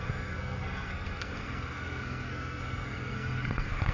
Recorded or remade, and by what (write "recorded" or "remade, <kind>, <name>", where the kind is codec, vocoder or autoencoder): remade, codec, SNAC